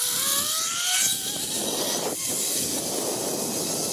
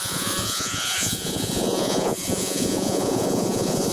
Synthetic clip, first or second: second